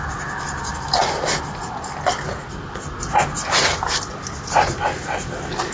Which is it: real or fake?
real